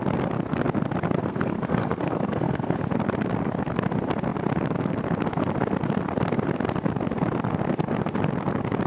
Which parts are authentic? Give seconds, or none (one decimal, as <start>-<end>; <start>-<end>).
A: 0.0-1.2; 2.8-8.9